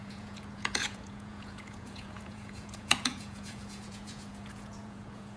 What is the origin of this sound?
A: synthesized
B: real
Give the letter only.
A